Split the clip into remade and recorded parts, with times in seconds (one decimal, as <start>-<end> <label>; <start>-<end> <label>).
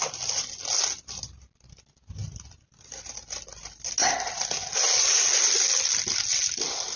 0.0-7.0 recorded